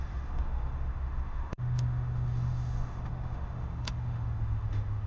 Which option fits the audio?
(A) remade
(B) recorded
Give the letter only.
A